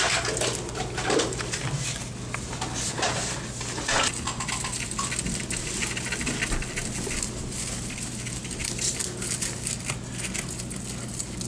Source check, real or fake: real